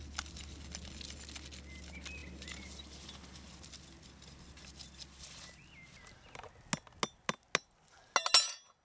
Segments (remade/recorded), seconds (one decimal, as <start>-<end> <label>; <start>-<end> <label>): 0.0-8.8 recorded